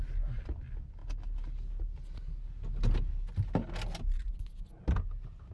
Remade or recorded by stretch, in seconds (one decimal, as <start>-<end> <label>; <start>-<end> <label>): 0.0-5.5 recorded